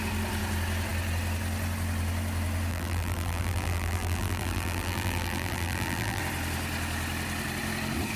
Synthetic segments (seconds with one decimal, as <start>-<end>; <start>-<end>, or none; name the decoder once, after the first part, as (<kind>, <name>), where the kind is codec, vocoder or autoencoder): 2.7-6.2 (vocoder, BigVGAN v2)